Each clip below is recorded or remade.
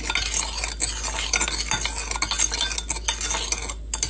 recorded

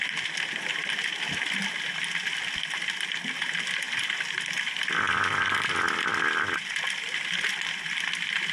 recorded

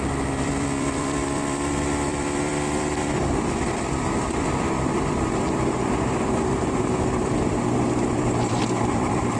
remade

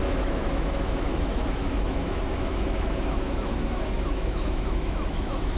remade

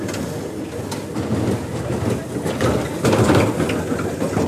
recorded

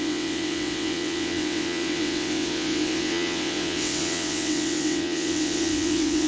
remade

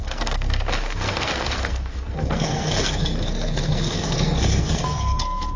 remade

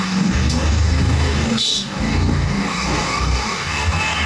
remade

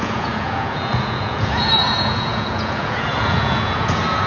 remade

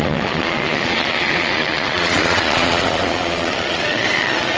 remade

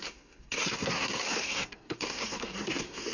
remade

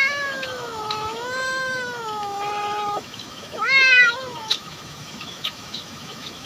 remade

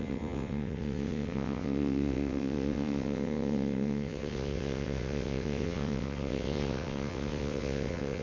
remade